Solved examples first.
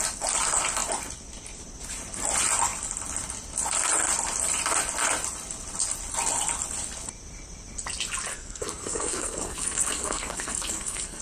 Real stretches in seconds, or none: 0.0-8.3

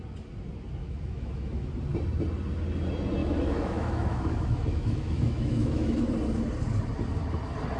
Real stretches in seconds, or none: 0.0-0.8; 1.7-3.2; 6.1-7.8

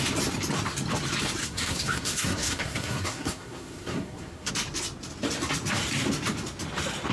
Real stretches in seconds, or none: 0.0-1.4; 4.5-7.1

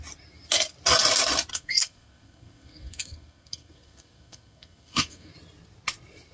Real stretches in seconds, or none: 0.0-1.5; 5.3-6.3

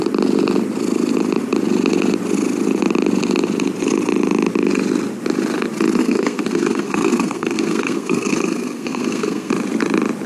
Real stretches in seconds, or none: 0.0-6.0; 9.5-10.3